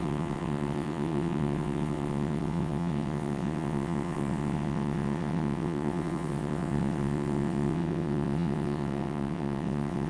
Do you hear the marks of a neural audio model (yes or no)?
yes